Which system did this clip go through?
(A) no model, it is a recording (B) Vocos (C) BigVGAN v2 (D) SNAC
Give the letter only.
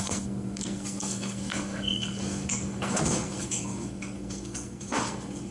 D